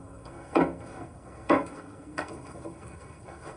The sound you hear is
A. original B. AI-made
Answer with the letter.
B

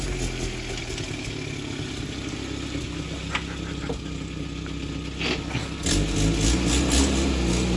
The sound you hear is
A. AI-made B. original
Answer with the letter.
B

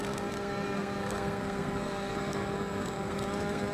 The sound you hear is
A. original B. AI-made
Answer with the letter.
B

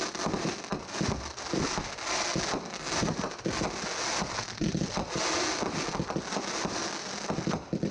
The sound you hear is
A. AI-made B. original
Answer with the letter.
B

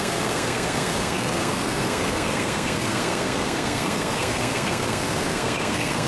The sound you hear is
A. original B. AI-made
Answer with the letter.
B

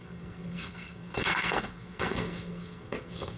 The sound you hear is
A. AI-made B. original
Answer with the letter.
A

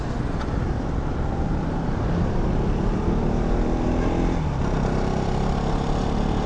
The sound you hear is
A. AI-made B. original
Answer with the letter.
B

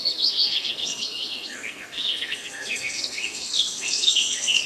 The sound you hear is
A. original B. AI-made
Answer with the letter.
B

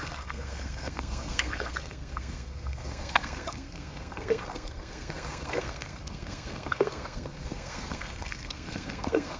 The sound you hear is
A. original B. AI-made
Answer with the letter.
B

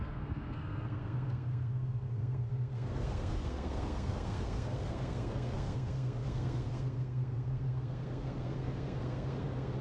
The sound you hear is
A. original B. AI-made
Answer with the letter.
B